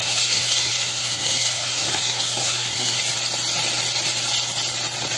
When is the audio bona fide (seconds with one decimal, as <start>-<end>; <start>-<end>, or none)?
3.0-5.2